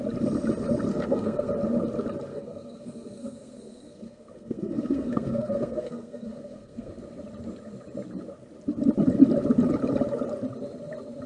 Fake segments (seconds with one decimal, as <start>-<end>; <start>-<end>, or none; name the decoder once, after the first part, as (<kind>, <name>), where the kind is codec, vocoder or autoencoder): 0.9-1.5 (codec, SNAC); 2.3-6.9